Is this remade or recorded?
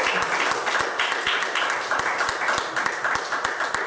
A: recorded